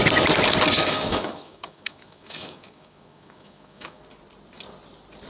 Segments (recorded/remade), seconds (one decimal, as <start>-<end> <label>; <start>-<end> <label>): 0.0-0.8 recorded; 0.8-4.0 remade; 4.0-5.3 recorded